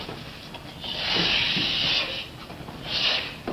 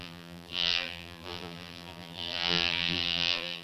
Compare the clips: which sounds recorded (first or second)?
first